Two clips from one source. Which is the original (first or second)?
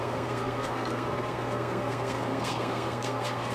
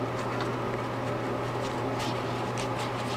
second